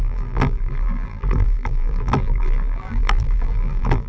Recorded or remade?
remade